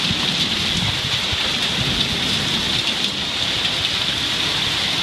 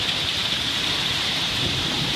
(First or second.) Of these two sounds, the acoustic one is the first